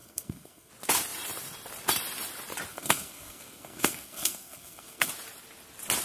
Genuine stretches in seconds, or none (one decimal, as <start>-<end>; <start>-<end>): 0.7-2.7; 5.1-6.0